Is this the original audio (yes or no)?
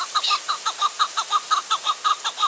yes